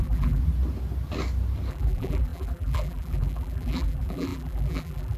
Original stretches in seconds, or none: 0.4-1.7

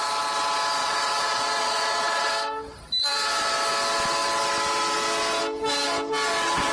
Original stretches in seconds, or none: 0.0-0.8; 2.3-6.7

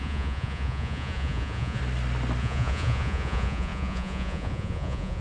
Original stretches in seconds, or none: 1.8-2.4

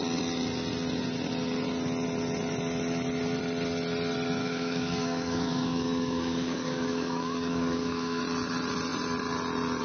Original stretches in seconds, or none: 0.0-4.4; 8.2-9.8

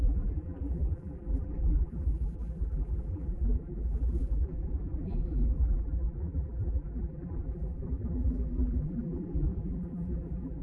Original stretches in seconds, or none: none

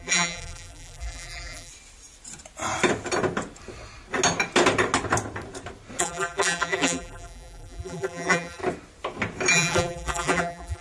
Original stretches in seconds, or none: 1.7-6.0; 8.6-9.5